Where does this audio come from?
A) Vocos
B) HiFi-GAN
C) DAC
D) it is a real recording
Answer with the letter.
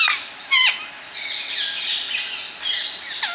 D